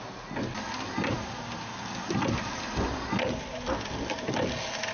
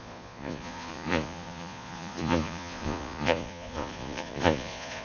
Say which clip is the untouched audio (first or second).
first